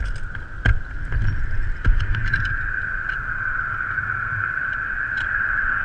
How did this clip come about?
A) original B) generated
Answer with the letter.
A